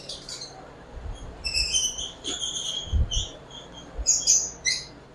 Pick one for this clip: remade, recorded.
remade